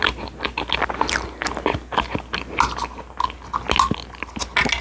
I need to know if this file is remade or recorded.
recorded